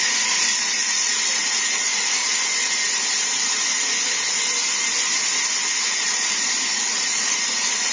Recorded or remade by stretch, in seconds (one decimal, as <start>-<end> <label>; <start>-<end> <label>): 0.0-2.2 remade; 2.2-6.5 recorded; 6.5-7.9 remade